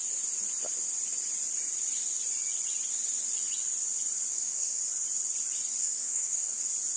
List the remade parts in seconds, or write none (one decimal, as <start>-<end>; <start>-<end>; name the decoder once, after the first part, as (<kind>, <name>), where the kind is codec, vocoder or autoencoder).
4.3-4.8 (codec, DAC); 5.8-6.6